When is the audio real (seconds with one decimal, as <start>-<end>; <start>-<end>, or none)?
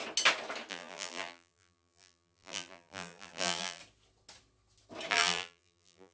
0.0-0.7; 3.8-5.1